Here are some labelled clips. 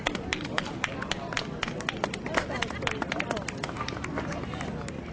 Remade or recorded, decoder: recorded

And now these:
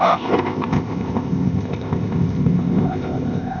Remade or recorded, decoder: remade, codec, ZipCodec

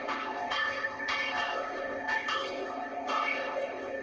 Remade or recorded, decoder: remade, codec, ZipCodec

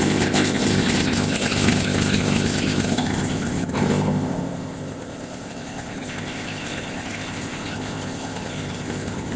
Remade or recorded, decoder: remade, codec, ZipCodec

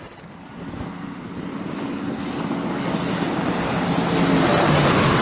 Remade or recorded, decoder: recorded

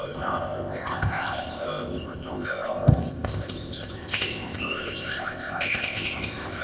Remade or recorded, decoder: remade, codec, ZipCodec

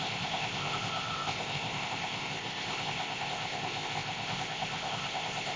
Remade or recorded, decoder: remade, codec, ZipCodec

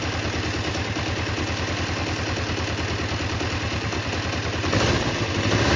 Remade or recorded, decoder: recorded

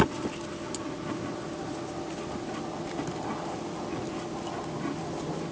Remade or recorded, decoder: recorded